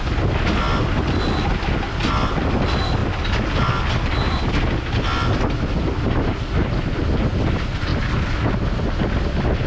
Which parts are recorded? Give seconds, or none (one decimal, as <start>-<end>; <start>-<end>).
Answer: 0.0-9.7